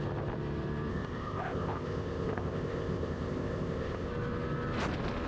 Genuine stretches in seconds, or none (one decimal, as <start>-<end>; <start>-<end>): 0.0-0.9; 4.1-5.3